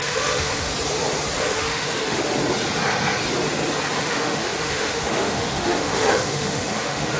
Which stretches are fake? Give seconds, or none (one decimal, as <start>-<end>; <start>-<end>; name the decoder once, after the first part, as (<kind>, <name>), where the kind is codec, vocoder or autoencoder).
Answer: 0.0-0.7 (autoencoder, DAC-VAE); 1.4-2.4; 4.0-7.2